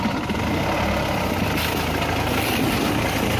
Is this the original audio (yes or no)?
yes